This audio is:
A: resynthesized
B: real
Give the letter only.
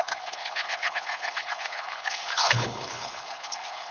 A